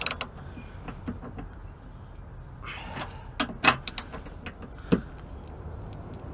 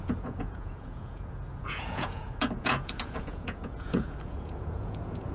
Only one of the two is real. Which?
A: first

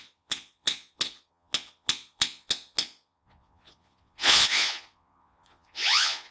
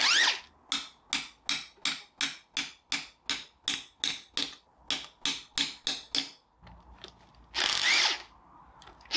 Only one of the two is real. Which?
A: second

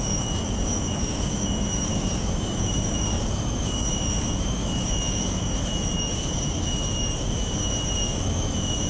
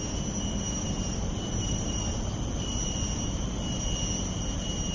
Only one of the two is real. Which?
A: second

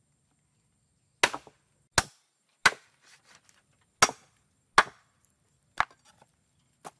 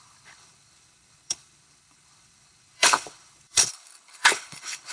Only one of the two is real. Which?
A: first